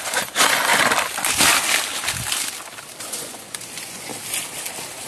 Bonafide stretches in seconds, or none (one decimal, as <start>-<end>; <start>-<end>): 0.7-3.0; 4.1-5.1